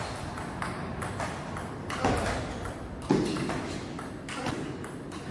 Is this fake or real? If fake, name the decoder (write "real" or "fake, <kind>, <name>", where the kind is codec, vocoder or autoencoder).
real